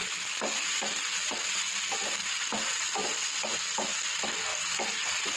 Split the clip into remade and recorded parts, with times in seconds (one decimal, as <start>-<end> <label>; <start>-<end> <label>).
0.0-5.4 recorded